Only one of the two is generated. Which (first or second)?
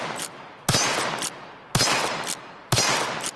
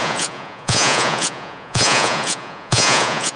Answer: second